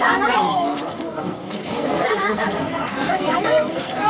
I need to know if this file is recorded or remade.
remade